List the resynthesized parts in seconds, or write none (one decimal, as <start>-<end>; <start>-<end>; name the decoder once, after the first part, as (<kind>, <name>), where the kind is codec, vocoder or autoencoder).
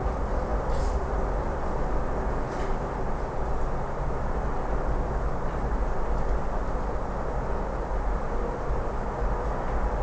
none